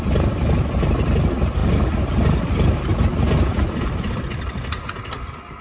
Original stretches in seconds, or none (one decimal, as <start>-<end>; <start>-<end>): 0.0-5.6